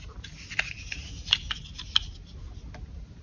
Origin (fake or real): real